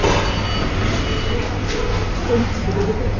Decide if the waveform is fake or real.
real